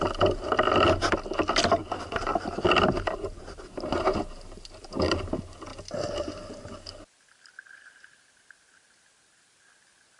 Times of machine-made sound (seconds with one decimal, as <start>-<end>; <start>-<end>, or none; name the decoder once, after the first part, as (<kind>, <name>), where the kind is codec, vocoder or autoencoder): none